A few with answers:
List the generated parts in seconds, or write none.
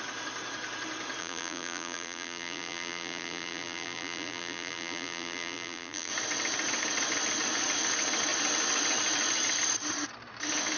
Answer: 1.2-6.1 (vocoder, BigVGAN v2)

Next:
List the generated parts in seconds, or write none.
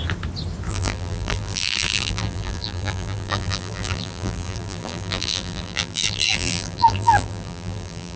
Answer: 0.7-8.2 (vocoder, BigVGAN v2)